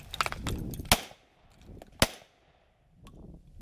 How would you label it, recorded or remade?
recorded